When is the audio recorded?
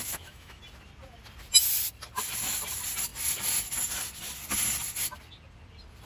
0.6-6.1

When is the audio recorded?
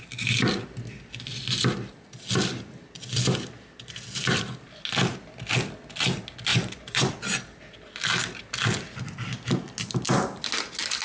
0.0-6.5; 7.1-11.0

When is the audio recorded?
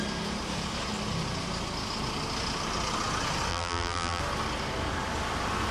0.0-3.5; 4.2-5.7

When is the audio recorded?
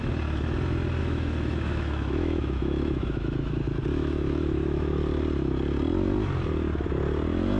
0.0-1.0; 3.5-3.9; 5.0-7.6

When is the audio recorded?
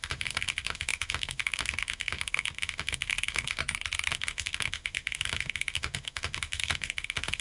3.6-4.1